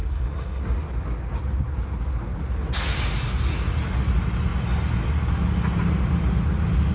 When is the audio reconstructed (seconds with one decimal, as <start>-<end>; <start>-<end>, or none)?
0.0-0.6